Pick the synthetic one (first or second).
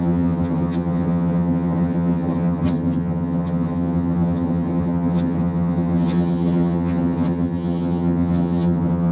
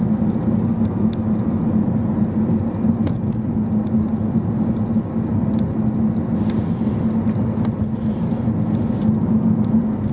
first